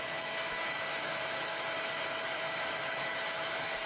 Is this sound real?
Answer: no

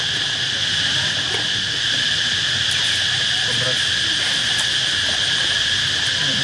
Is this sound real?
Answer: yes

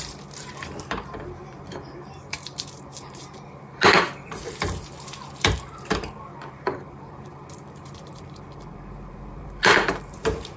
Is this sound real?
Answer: no